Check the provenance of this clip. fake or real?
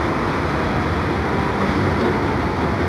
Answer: real